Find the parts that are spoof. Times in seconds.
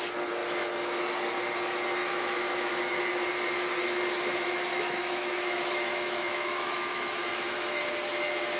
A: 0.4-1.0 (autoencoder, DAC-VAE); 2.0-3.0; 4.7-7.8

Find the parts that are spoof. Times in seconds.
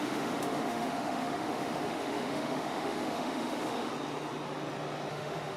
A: 0.0-3.9 (autoencoder, DAC-VAE); 5.1-5.6